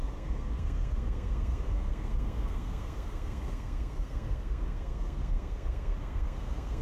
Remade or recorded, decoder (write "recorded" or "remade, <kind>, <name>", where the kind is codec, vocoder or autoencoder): remade, codec, SNAC